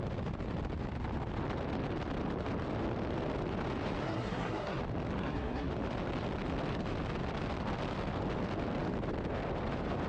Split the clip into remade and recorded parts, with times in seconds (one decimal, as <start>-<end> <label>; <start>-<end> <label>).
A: 0.0-4.0 recorded; 4.0-4.8 remade; 4.8-5.2 recorded; 5.2-5.7 remade; 5.7-10.1 recorded